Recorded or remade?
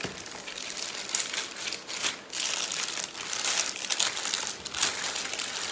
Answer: recorded